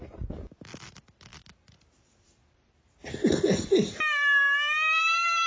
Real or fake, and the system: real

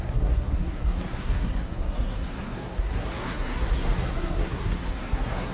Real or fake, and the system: fake, codec, SNAC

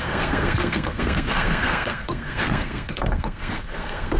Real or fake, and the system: fake, codec, SNAC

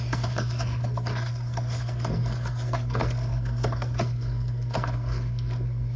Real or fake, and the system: fake, codec, SNAC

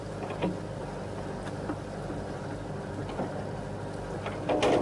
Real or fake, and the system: real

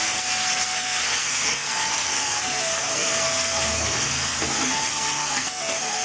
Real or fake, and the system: fake, codec, SNAC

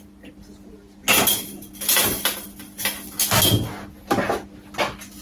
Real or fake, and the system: real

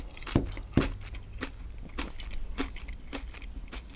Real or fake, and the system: real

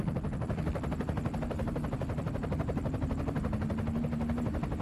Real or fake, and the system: real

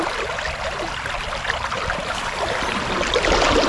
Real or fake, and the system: real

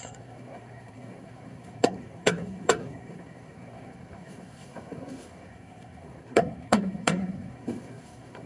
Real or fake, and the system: fake, codec, SNAC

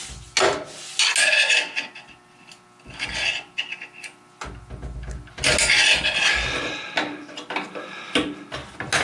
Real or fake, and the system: real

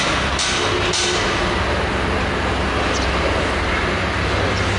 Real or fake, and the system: real